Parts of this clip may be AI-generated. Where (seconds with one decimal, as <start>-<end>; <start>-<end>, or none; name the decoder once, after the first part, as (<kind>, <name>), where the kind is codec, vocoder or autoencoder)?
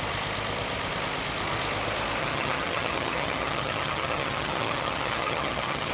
2.2-5.9 (vocoder, HiFi-GAN)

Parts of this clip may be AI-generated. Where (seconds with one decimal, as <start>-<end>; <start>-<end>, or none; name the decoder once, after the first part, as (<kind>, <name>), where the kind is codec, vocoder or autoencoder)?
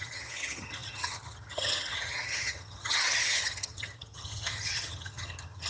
0.0-5.7 (vocoder, HiFi-GAN)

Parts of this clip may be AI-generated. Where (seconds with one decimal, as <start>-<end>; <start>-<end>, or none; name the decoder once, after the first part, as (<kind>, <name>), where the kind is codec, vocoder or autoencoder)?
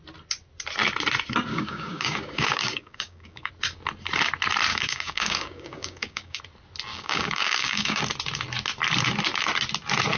1.5-3.5 (codec, DAC); 4.7-6.4; 6.9-8.0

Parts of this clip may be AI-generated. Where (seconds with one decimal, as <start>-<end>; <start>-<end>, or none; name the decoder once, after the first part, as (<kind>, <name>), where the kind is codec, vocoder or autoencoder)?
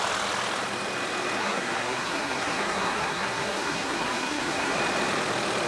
1.4-4.8 (codec, SNAC)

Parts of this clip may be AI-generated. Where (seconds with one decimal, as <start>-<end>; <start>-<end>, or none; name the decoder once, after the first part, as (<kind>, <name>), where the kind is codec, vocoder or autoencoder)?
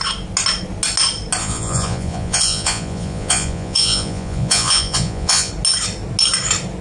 1.4-5.5 (vocoder, Vocos)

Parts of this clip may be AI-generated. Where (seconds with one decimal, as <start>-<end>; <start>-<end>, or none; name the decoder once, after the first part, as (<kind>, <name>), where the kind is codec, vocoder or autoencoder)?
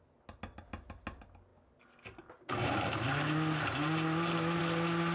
none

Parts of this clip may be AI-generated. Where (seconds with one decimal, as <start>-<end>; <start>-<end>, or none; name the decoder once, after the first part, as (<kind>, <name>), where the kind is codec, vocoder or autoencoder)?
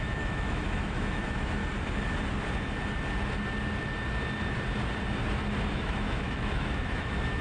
0.0-1.6 (autoencoder, DAC-VAE); 5.7-7.4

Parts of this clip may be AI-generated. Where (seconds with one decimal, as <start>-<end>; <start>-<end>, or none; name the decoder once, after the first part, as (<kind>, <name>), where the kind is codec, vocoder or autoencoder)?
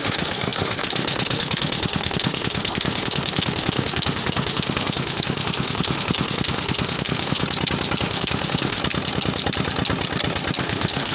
0.0-7.4 (autoencoder, DAC-VAE); 8.0-8.8; 10.6-11.1